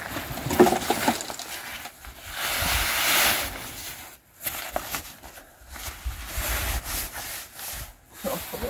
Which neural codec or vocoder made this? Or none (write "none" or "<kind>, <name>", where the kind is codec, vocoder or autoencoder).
none